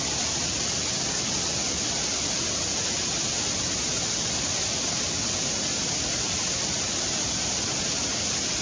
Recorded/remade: recorded